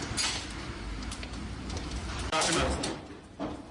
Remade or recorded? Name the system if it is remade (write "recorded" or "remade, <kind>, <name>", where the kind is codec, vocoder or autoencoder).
remade, vocoder, BigVGAN v2